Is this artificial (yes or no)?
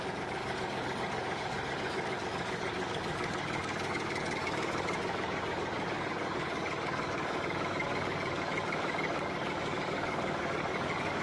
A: yes